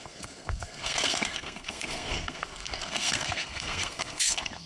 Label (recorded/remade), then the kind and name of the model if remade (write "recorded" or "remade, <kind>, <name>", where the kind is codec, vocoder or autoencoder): remade, codec, SNAC